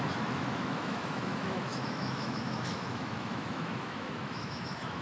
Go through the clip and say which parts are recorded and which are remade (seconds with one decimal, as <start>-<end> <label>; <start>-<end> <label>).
0.0-5.0 remade